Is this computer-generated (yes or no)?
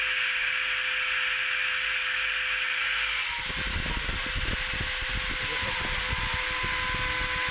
no